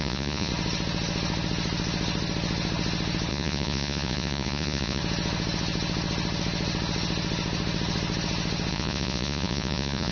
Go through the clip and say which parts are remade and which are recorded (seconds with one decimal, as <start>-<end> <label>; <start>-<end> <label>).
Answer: 0.0-0.5 remade; 0.5-3.3 recorded; 3.3-5.0 remade; 5.0-8.7 recorded; 8.7-10.1 remade